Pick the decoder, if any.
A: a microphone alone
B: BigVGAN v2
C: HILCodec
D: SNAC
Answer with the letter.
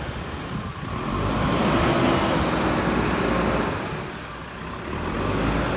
A